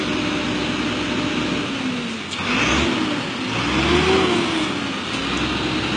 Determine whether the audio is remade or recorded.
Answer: recorded